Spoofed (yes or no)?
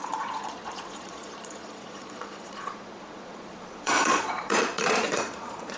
yes